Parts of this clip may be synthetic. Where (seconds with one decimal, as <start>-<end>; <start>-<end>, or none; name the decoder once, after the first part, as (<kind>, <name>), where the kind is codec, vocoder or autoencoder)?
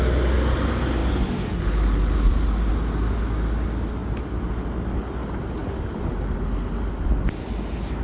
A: none